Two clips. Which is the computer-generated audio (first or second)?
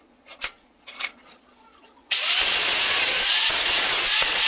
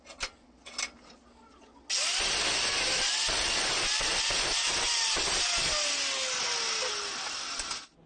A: first